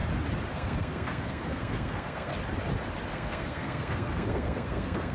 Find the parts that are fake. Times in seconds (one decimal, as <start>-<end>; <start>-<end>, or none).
0.5-2.3; 3.1-5.1